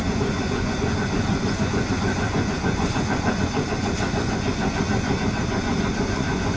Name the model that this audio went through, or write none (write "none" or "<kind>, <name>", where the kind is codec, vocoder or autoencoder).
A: vocoder, Vocos